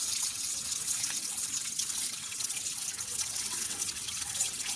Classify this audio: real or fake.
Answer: fake